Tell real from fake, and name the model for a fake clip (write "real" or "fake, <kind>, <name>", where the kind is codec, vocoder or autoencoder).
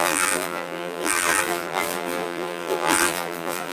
fake, vocoder, BigVGAN v2